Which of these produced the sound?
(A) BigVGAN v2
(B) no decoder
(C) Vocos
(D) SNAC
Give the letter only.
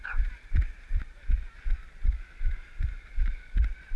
A